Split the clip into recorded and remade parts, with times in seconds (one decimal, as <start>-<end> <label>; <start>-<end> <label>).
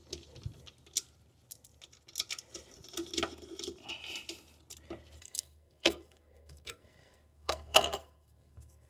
0.0-5.2 recorded; 5.2-8.9 remade